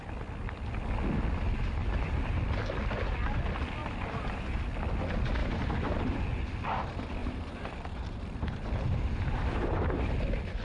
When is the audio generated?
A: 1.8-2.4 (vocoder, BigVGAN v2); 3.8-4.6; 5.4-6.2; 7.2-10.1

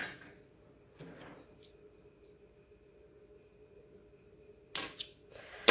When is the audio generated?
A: none

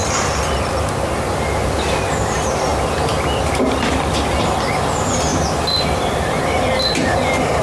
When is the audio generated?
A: none

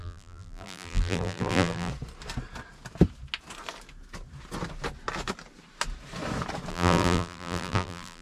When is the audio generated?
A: 0.0-1.9 (vocoder, BigVGAN v2); 6.7-8.2

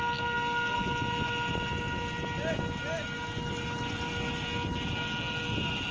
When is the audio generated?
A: none